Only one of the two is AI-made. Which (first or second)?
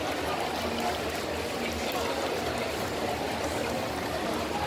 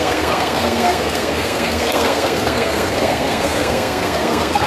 second